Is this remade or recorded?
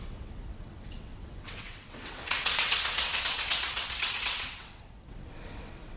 remade